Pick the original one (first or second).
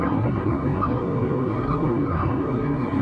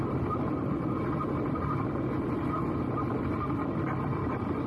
second